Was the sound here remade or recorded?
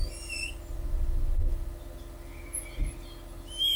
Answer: recorded